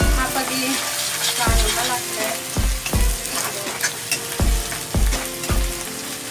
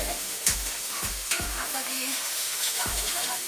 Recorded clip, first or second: first